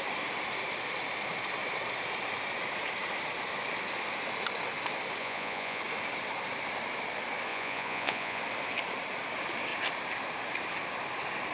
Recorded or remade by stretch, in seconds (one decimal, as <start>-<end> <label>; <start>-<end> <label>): 0.0-5.2 recorded; 5.2-5.8 remade; 5.8-7.5 recorded; 7.5-8.4 remade; 8.4-11.5 recorded